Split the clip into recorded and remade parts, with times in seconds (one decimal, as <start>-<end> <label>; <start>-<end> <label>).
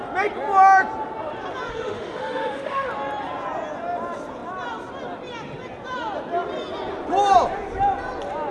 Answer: 0.0-1.7 recorded; 1.7-2.9 remade; 2.9-8.5 recorded